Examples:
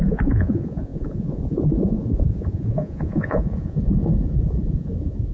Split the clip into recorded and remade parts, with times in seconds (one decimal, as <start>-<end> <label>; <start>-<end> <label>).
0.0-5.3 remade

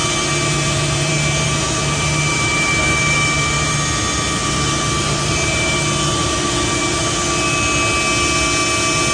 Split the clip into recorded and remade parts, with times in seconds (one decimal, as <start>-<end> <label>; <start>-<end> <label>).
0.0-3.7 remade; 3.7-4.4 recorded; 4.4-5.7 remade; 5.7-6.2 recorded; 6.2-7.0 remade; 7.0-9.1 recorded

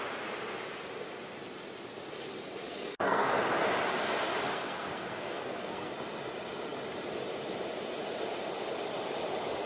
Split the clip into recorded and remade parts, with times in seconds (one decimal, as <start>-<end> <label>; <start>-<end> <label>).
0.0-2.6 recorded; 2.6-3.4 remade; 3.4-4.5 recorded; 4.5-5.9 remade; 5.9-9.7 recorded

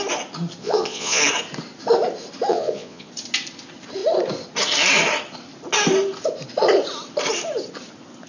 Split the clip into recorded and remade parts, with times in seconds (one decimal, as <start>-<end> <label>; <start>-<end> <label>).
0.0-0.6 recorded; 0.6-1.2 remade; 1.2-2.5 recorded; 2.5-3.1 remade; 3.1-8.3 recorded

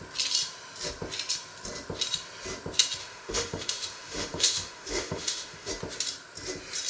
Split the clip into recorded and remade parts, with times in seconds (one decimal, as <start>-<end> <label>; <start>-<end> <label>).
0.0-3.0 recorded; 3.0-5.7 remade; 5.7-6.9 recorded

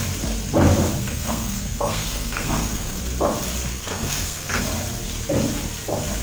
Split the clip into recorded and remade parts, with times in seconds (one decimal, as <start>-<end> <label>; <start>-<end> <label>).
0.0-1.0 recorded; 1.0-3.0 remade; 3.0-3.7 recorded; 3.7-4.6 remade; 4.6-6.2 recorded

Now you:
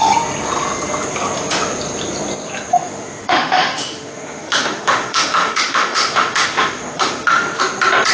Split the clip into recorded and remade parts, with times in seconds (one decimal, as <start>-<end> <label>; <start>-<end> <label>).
0.0-2.7 recorded; 2.7-7.6 remade; 7.6-8.1 recorded